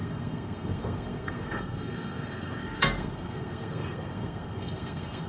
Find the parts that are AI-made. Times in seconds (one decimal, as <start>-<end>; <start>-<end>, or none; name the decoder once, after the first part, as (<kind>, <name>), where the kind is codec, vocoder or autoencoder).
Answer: 0.0-5.3 (codec, SNAC)